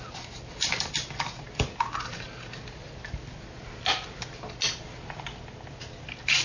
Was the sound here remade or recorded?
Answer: recorded